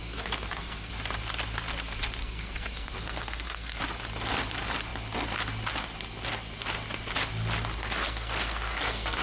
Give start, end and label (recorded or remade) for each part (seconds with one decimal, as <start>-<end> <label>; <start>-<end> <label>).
0.0-0.9 remade; 0.9-2.2 recorded; 2.2-3.8 remade; 3.8-8.0 recorded; 8.0-9.2 remade

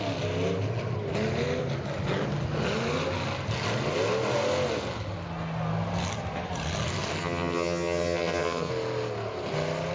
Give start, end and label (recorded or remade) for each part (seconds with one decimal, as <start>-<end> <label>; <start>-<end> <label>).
0.0-7.2 recorded; 7.2-8.7 remade; 8.7-9.9 recorded

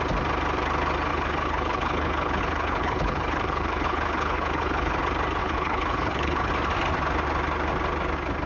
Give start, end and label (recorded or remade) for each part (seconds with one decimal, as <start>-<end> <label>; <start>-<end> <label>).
0.0-1.1 recorded; 1.1-5.0 remade; 5.0-5.4 recorded; 5.4-6.5 remade; 6.5-8.5 recorded